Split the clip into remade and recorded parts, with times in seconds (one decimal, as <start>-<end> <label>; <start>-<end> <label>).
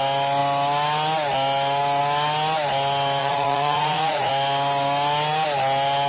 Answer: 0.0-3.2 recorded; 3.2-4.3 remade; 4.3-6.1 recorded